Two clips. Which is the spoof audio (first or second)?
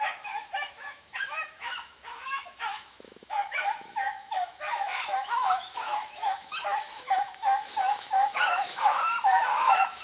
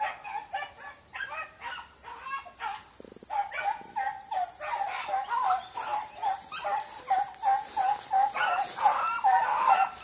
first